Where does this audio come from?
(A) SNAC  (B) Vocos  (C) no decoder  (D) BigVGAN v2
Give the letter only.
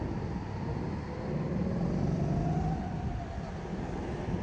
C